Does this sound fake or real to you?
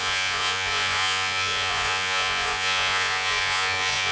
fake